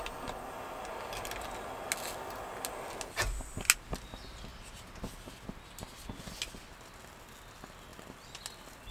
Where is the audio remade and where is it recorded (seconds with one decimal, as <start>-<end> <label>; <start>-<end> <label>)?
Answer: 0.0-7.9 recorded; 7.9-8.4 remade; 8.4-8.9 recorded

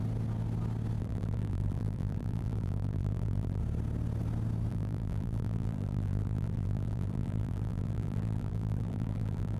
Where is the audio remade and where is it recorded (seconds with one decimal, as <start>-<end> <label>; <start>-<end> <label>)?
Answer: 0.0-1.0 recorded; 1.0-3.6 remade; 3.6-4.7 recorded; 4.7-9.6 remade

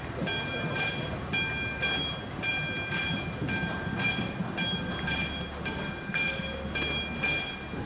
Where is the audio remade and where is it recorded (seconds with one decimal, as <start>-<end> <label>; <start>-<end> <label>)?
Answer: 0.0-7.9 recorded